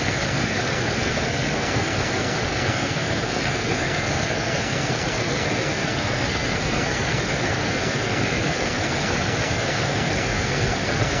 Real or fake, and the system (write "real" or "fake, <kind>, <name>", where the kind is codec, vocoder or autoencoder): fake, codec, SNAC